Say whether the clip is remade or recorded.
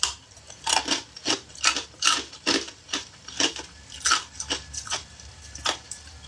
recorded